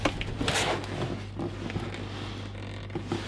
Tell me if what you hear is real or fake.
real